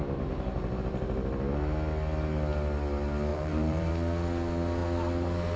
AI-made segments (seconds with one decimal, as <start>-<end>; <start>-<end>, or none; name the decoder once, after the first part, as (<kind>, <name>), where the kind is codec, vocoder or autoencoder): 3.3-3.9 (vocoder, BigVGAN v2)